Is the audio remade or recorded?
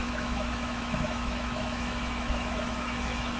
remade